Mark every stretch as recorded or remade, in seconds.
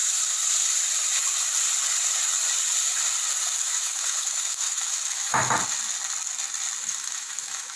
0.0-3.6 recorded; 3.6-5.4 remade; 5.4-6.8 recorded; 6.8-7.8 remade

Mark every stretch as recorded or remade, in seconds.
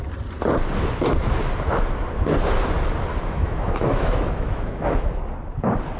0.0-3.1 recorded; 3.1-5.2 remade; 5.2-6.0 recorded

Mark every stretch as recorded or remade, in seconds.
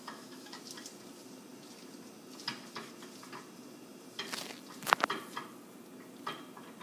0.0-0.6 remade; 0.6-6.8 recorded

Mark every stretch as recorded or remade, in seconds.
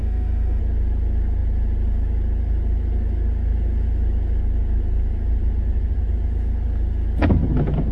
0.0-0.6 remade; 0.6-7.9 recorded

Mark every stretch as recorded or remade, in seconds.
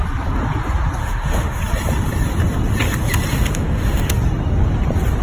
0.0-1.0 recorded; 1.0-1.6 remade; 1.6-3.3 recorded; 3.3-4.2 remade; 4.2-5.2 recorded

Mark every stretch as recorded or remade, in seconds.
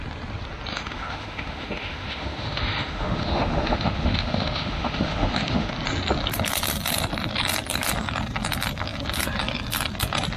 0.0-0.7 recorded; 0.7-5.7 remade; 5.7-10.4 recorded